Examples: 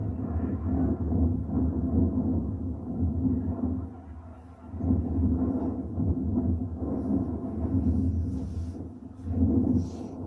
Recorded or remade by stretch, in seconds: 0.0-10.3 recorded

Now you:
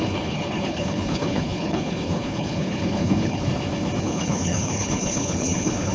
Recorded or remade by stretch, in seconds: 0.0-3.5 remade; 3.5-4.0 recorded; 4.0-5.9 remade